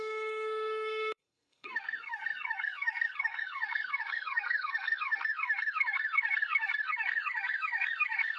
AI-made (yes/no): yes